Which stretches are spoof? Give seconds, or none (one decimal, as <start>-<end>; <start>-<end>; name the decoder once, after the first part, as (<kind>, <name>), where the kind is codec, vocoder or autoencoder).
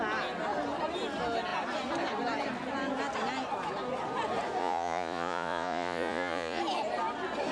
4.6-6.6 (vocoder, Vocos)